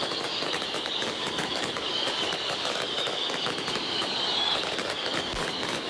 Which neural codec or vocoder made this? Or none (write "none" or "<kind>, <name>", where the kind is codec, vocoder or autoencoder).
codec, DAC